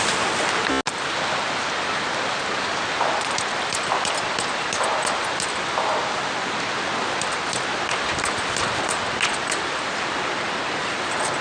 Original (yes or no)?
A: yes